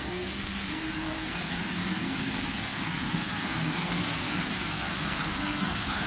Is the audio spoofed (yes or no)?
yes